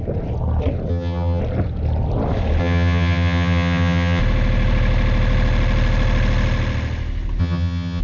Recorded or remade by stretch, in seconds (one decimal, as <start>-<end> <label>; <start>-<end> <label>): 0.0-0.9 recorded; 0.9-1.4 remade; 1.4-2.6 recorded; 2.6-4.2 remade; 4.2-7.4 recorded; 7.4-8.0 remade